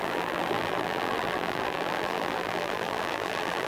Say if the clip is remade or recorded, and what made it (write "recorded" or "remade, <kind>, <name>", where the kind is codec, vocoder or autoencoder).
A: remade, vocoder, BigVGAN v2